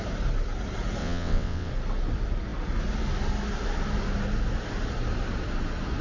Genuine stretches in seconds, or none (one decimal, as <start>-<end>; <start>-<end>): 0.0-1.0; 1.7-6.0